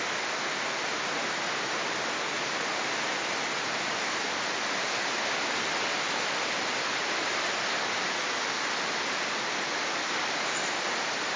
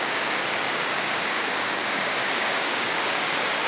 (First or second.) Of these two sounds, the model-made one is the second